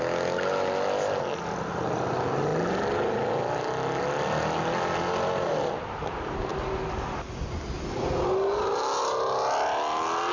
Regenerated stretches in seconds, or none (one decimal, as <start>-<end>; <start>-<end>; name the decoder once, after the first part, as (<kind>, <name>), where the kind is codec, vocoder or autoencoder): none